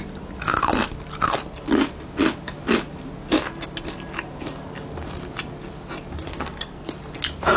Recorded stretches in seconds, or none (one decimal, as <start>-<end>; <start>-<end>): 0.0-6.3; 6.9-7.6